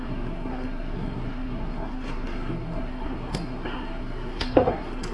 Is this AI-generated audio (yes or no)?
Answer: yes